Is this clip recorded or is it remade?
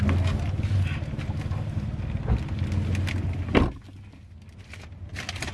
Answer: recorded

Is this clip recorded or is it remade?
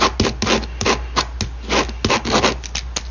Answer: recorded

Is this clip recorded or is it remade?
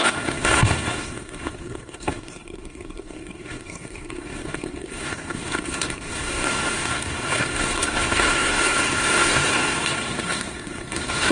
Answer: remade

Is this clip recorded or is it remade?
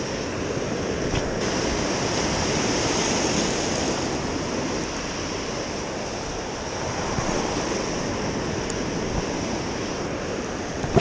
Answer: recorded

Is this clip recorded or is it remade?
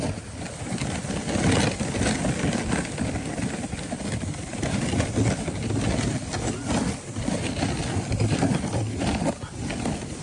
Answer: recorded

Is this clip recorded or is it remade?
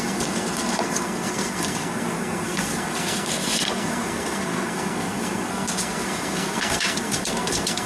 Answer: remade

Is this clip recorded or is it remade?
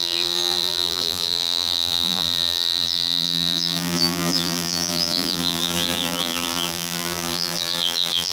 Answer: remade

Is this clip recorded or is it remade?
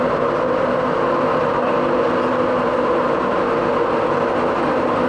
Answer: recorded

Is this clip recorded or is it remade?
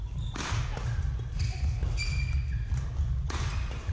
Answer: recorded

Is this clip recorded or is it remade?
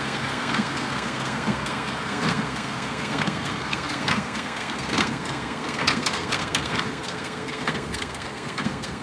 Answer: remade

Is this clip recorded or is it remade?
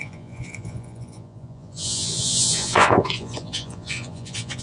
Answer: remade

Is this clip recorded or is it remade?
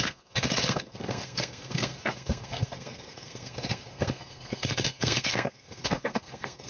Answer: remade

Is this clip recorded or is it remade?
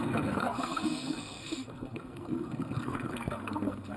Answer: remade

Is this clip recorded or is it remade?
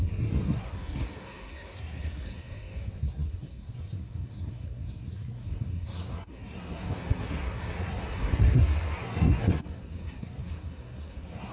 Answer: remade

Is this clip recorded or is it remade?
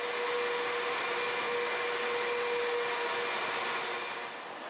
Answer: recorded